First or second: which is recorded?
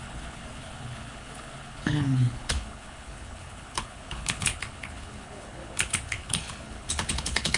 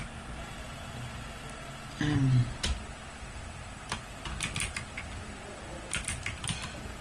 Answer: second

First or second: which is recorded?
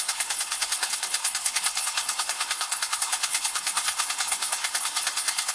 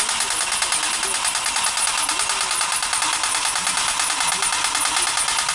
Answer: second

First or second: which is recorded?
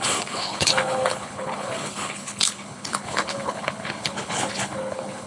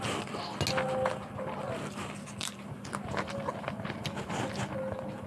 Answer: second